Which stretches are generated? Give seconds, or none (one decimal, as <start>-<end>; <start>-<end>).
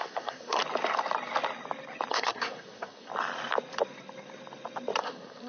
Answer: 0.0-0.6; 2.1-3.1; 5.0-5.5